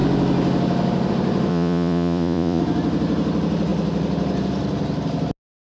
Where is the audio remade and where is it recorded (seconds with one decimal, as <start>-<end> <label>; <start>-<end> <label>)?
0.0-1.5 recorded; 1.5-2.6 remade; 2.6-5.8 recorded